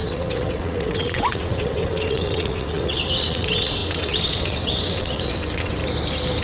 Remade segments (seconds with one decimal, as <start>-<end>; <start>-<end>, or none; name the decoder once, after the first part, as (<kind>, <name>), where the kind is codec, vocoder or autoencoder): 0.0-5.8 (vocoder, WaveNeXt)